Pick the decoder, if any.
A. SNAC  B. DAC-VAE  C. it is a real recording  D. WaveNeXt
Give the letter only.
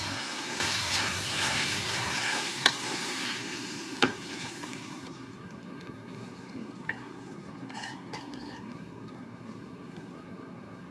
A